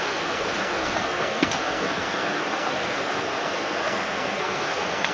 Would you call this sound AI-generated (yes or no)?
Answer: yes